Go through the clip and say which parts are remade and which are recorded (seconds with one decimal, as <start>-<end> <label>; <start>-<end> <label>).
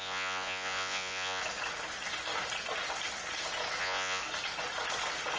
0.0-1.4 remade; 1.4-3.8 recorded; 3.8-4.2 remade; 4.2-5.4 recorded